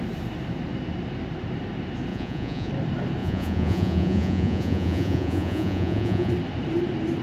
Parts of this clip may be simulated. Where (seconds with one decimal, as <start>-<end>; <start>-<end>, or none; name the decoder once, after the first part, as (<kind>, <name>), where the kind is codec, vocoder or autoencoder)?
2.1-2.7 (vocoder, Vocos); 3.2-6.3